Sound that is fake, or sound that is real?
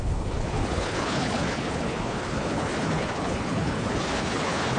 fake